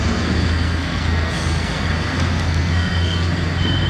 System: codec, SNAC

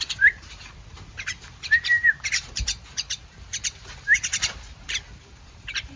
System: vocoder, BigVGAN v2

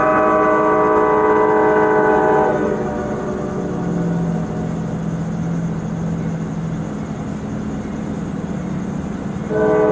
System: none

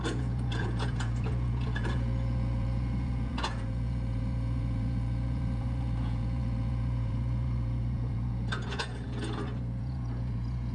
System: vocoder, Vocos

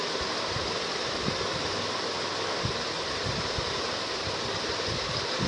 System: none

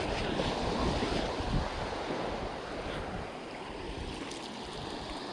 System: none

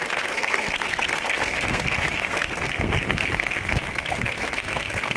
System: codec, SNAC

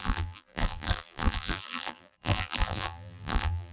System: vocoder, BigVGAN v2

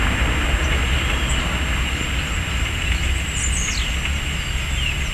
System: none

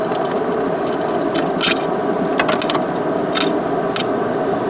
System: none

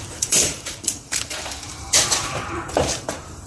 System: vocoder, BigVGAN v2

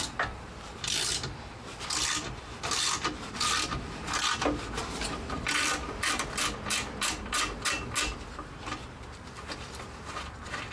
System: vocoder, BigVGAN v2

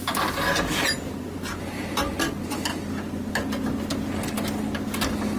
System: none